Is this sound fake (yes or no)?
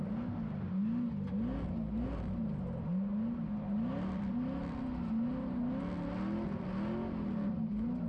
no